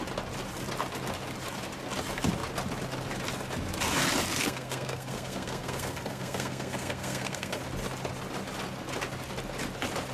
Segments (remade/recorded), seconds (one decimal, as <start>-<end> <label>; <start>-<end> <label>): 0.0-4.4 recorded; 4.4-7.6 remade; 7.6-10.1 recorded